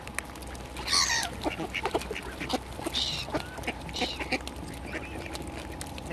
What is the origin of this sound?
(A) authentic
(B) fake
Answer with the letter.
A